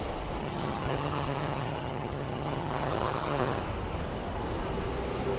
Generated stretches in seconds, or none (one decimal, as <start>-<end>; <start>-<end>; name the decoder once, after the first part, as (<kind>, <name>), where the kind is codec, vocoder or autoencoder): 0.4-3.6 (vocoder, HiFi-GAN)